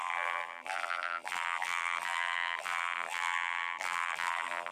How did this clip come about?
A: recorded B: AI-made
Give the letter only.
B